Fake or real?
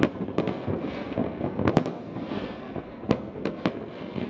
fake